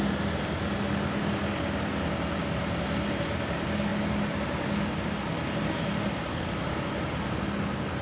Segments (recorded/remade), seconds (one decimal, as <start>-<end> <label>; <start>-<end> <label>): 0.0-6.3 recorded; 6.3-6.8 remade; 6.8-8.0 recorded